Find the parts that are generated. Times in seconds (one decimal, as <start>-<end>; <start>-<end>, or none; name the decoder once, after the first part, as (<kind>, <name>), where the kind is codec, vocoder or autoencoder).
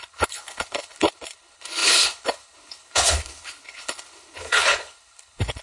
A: 0.0-5.6 (codec, HILCodec)